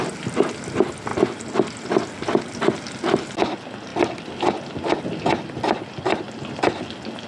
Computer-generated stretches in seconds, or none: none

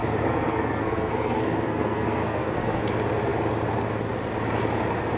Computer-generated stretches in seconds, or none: 0.0-2.8 (codec, SNAC)

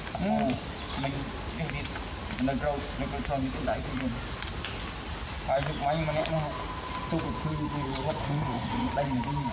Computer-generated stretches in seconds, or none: 8.2-8.9 (codec, SNAC)

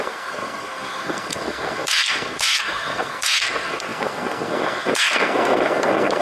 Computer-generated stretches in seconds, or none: 0.0-6.2 (codec, SNAC)

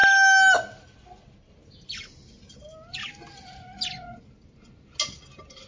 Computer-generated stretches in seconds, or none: none

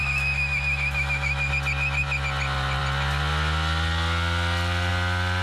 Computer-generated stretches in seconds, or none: 0.0-1.5 (autoencoder, DAC-VAE)

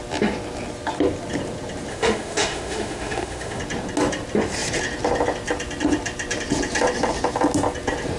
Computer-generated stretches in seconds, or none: 1.9-3.6 (autoencoder, DAC-VAE)